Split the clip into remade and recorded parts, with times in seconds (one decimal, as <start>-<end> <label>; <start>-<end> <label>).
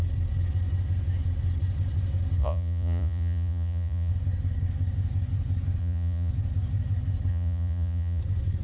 0.0-2.4 recorded; 2.4-4.1 remade; 4.1-5.8 recorded; 5.8-6.3 remade; 6.3-7.3 recorded; 7.3-8.2 remade; 8.2-8.6 recorded